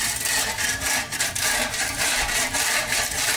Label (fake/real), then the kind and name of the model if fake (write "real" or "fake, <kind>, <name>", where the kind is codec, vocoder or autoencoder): fake, vocoder, BigVGAN v2